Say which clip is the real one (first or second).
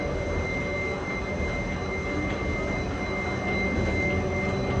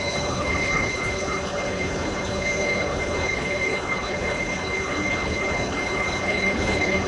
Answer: first